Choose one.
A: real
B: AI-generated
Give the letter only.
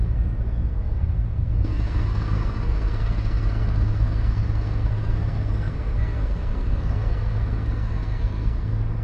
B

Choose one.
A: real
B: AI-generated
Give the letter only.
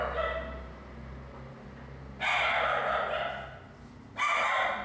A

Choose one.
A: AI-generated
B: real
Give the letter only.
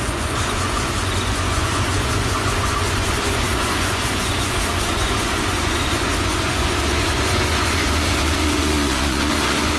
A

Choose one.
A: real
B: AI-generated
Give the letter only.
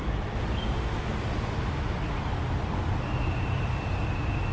A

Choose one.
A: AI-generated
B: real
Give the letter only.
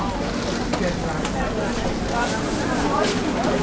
B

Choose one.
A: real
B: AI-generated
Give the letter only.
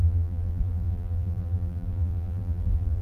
B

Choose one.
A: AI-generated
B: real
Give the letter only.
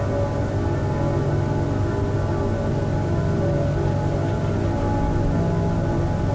B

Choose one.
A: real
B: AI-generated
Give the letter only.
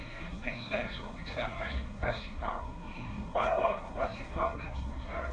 B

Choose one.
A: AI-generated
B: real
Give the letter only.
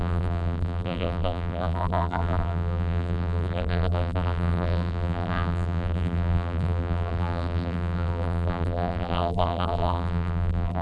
A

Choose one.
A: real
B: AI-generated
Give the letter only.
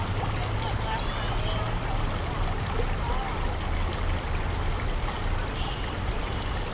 A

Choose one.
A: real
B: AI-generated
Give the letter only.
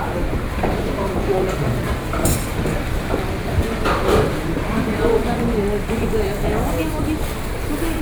B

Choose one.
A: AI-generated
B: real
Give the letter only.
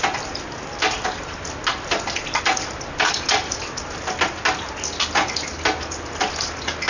B